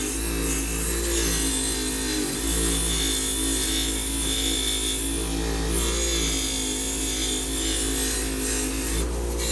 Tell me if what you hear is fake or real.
real